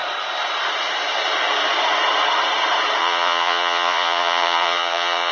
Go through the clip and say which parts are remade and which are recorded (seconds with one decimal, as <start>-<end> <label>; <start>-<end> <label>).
0.0-3.0 recorded; 3.0-5.3 remade

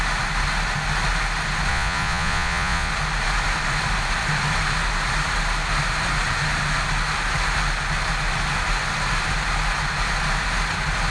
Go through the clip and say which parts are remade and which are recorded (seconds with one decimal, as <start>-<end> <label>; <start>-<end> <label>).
0.0-1.7 recorded; 1.7-2.9 remade; 2.9-11.1 recorded

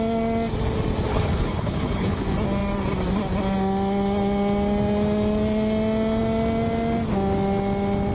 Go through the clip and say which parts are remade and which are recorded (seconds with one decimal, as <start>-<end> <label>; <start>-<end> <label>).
0.0-1.1 recorded; 1.1-2.2 remade; 2.2-8.1 recorded

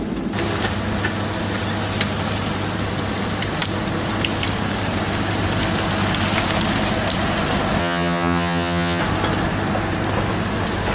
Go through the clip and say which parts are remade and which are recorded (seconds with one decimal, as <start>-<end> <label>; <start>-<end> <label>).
0.0-7.8 recorded; 7.8-9.0 remade; 9.0-10.9 recorded

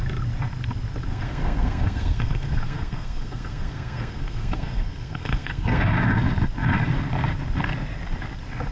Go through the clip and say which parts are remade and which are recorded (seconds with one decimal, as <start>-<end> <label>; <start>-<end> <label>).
0.0-1.1 recorded; 1.1-5.8 remade; 5.8-8.7 recorded

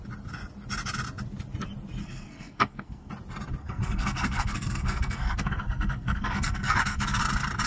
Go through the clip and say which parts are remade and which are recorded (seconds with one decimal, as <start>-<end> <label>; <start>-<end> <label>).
0.0-2.0 recorded; 2.0-3.1 remade; 3.1-3.6 recorded; 3.6-7.2 remade; 7.2-7.7 recorded